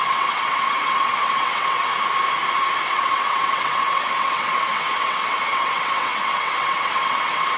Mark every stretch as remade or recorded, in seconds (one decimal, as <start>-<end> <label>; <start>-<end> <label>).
0.0-1.9 remade; 1.9-2.9 recorded; 2.9-7.6 remade